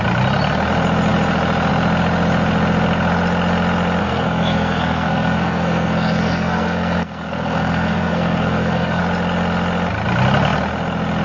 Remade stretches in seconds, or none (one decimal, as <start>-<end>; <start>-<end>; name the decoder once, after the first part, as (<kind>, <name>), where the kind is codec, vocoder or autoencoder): 4.0-9.0 (codec, SNAC)